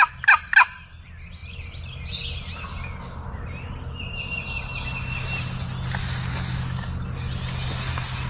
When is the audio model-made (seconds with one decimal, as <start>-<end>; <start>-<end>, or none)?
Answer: none